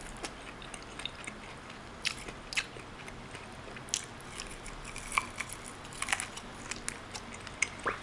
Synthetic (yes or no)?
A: no